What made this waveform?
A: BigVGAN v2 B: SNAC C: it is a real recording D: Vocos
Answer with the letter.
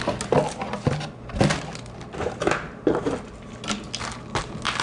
C